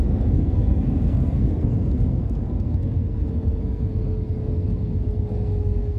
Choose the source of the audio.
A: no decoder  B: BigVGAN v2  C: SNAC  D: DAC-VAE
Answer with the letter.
C